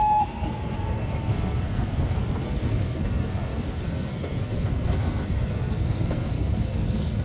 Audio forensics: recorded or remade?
remade